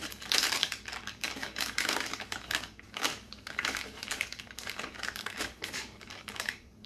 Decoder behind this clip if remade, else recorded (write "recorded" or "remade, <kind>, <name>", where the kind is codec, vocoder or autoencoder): remade, codec, DAC